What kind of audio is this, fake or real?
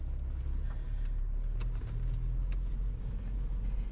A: real